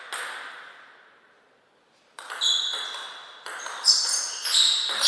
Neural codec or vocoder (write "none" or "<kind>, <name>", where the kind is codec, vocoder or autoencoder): none